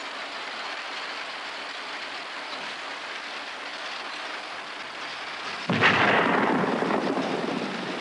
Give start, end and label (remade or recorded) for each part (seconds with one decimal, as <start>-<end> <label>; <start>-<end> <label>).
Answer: 0.0-3.7 remade; 3.7-6.7 recorded; 6.7-8.0 remade